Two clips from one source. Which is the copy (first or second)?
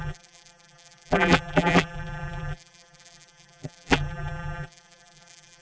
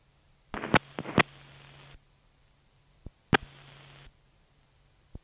first